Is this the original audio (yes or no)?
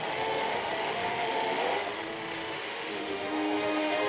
no